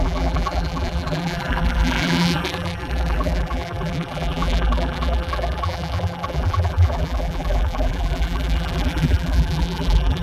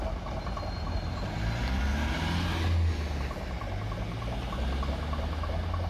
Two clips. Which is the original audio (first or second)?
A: second